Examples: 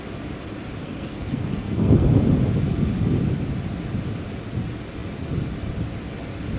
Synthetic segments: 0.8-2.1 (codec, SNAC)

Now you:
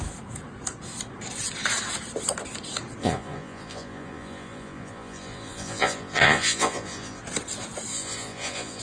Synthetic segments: 3.0-7.2 (vocoder, Vocos); 7.9-8.8

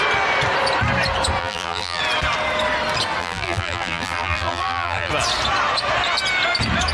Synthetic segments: 1.4-2.0 (vocoder, BigVGAN v2); 3.2-5.1

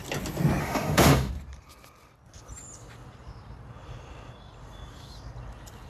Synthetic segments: 0.6-1.3 (autoencoder, DAC-VAE)

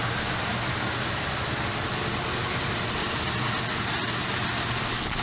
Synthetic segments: none

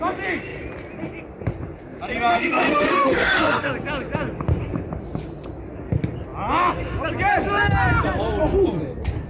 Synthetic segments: 2.3-3.7 (autoencoder, DAC-VAE)

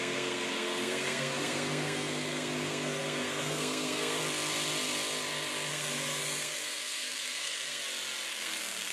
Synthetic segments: 0.0-4.2 (codec, SNAC); 5.7-7.8; 8.3-8.9

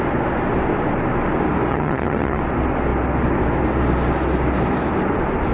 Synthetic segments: 1.7-2.4 (vocoder, HiFi-GAN)